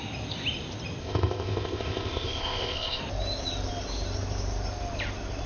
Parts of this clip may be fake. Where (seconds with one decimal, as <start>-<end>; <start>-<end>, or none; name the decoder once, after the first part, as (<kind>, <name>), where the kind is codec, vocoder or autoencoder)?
1.0-3.0 (codec, ZipCodec)